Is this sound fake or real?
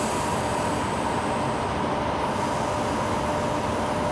real